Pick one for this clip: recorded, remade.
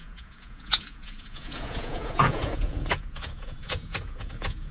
remade